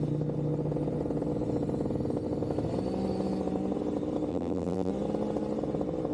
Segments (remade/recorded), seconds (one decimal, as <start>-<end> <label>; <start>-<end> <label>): 0.0-4.3 recorded; 4.3-4.9 remade; 4.9-6.1 recorded